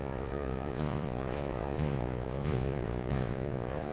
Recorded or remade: remade